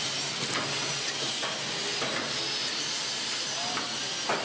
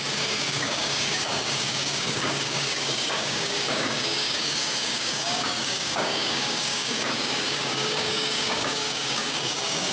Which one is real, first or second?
first